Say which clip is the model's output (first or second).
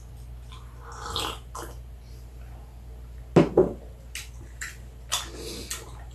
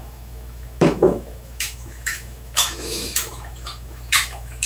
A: second